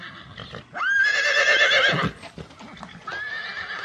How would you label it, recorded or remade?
recorded